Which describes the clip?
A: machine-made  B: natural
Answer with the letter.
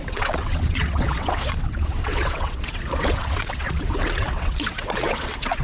A